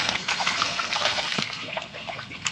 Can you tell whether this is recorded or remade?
remade